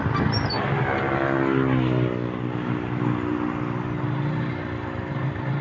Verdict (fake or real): real